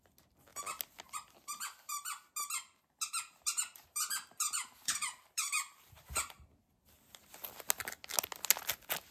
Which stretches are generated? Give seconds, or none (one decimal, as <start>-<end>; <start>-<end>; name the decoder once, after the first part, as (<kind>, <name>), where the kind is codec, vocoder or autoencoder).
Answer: 3.5-5.5 (vocoder, BigVGAN v2)